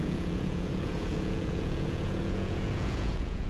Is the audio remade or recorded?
remade